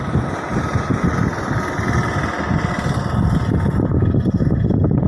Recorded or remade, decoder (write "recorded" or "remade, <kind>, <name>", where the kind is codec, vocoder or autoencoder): recorded